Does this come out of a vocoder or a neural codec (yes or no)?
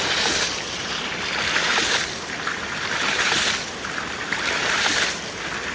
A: no